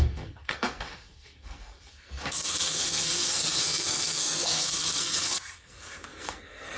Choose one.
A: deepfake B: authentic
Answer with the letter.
A